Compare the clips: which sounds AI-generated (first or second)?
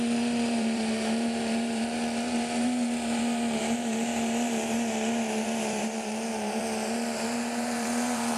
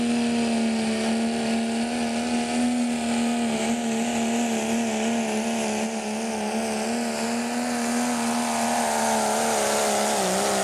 first